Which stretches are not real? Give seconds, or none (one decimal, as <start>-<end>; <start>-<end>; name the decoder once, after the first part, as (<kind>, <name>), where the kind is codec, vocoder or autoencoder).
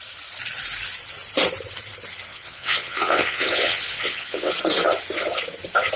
2.3-4.5 (vocoder, WaveNeXt)